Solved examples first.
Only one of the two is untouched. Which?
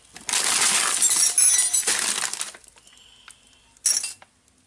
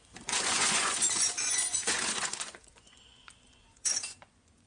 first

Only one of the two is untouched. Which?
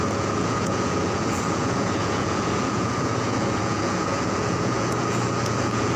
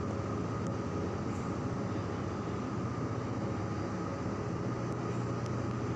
second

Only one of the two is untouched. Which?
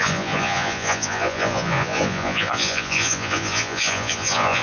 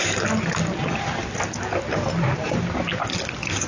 second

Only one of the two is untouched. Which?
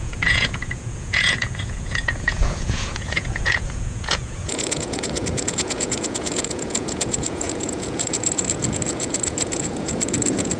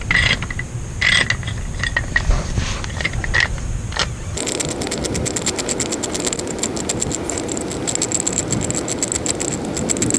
second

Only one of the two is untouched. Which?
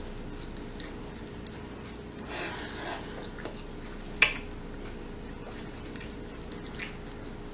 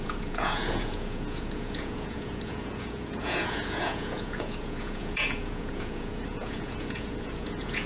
first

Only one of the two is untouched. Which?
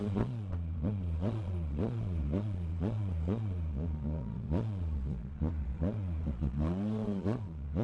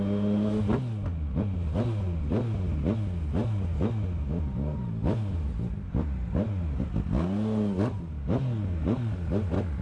second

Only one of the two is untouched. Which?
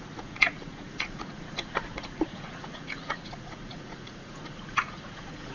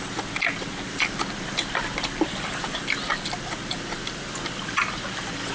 second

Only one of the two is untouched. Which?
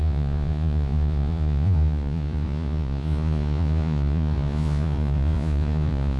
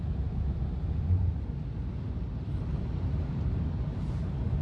second